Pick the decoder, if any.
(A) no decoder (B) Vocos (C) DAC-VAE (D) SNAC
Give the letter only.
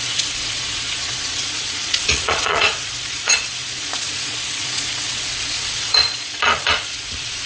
B